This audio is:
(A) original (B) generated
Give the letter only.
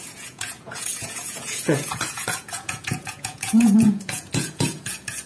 B